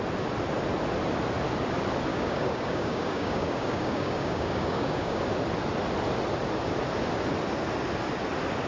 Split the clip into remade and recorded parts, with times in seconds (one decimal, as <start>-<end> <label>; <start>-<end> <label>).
0.0-2.1 recorded; 2.1-5.2 remade; 5.2-8.7 recorded